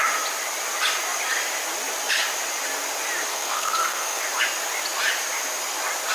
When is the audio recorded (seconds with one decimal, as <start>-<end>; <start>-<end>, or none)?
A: 0.0-3.3; 4.2-6.1